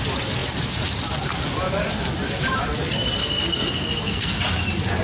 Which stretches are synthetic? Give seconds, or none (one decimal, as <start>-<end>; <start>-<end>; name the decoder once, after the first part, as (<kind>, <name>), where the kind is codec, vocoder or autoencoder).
3.2-4.4 (codec, SNAC)